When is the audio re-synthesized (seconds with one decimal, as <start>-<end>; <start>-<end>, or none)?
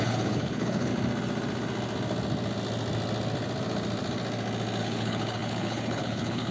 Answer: 0.0-0.9; 4.8-6.5